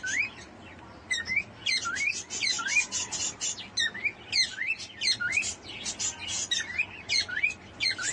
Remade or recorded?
recorded